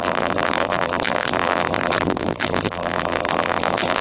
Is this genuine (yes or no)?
no